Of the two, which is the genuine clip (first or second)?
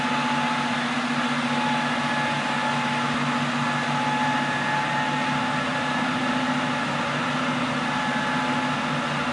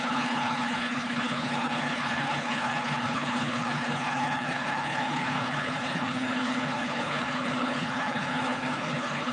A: first